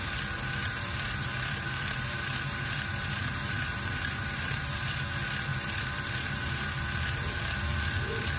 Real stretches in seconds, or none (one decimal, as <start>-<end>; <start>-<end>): 0.0-0.6; 5.0-5.5; 7.6-8.4